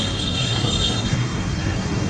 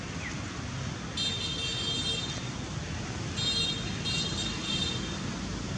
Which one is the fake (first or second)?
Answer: first